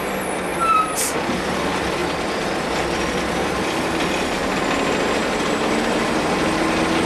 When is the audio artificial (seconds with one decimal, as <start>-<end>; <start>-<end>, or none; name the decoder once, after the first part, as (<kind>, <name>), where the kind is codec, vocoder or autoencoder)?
2.0-3.6 (vocoder, BigVGAN v2); 5.2-6.1